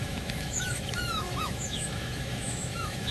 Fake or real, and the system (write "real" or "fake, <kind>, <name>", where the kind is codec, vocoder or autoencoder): fake, autoencoder, DAC-VAE